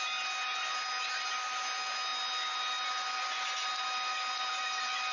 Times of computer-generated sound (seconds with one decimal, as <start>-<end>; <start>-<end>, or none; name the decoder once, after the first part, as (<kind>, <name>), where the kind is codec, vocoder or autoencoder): none